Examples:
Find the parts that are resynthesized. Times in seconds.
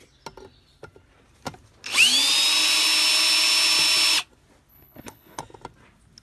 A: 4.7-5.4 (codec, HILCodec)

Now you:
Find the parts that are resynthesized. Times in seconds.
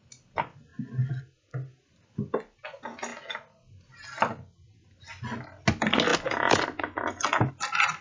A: none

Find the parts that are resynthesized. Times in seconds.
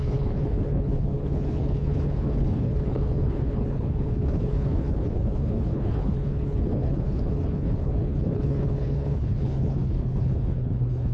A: 0.0-11.1 (codec, HILCodec)